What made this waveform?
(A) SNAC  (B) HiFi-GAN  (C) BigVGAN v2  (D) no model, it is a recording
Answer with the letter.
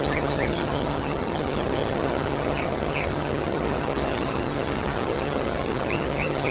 B